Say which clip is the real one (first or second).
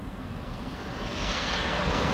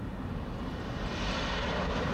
second